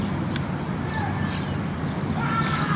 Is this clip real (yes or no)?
yes